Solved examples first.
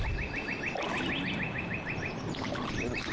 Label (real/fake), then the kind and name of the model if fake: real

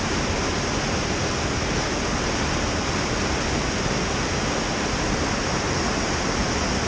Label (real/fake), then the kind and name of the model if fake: real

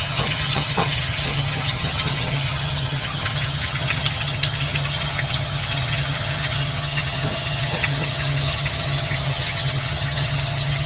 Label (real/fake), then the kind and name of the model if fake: fake, vocoder, HiFi-GAN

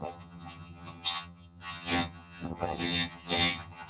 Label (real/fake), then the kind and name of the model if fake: fake, vocoder, HiFi-GAN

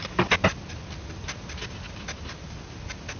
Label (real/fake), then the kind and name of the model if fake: real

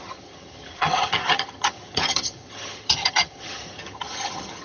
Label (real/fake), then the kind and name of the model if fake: fake, vocoder, HiFi-GAN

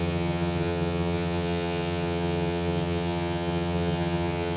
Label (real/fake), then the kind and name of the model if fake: fake, vocoder, HiFi-GAN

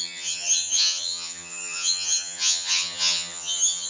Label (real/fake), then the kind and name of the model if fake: fake, vocoder, HiFi-GAN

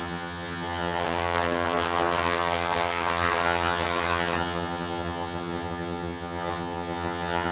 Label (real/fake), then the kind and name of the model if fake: fake, vocoder, HiFi-GAN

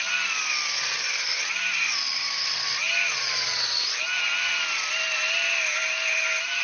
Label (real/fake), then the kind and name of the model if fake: real